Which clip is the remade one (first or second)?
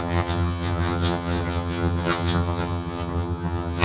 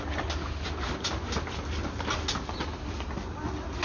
first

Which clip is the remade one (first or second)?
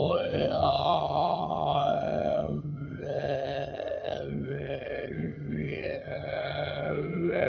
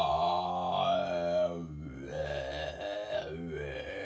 first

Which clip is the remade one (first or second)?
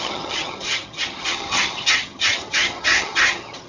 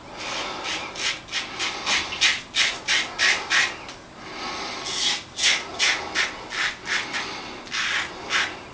first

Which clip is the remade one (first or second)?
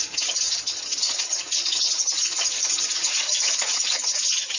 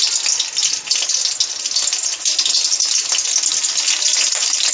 first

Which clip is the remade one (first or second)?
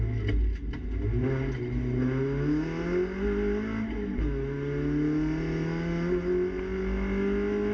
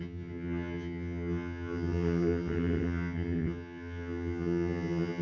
second